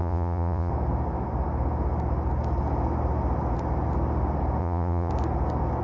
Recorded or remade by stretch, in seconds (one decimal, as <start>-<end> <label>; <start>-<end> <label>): 0.0-0.7 remade; 0.7-4.6 recorded; 4.6-5.1 remade; 5.1-5.8 recorded